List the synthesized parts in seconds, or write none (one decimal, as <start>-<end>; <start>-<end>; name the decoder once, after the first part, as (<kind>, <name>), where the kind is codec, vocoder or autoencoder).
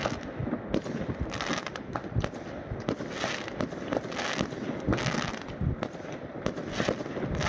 none